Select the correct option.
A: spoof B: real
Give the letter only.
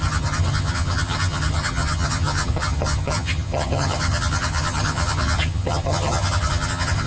A